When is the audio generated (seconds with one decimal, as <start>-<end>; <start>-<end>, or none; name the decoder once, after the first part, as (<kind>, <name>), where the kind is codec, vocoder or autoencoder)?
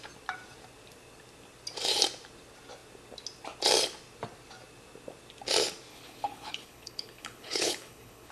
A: 5.9-8.3 (codec, HILCodec)